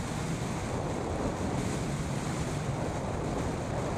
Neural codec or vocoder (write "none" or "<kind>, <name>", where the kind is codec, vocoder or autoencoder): vocoder, BigVGAN v2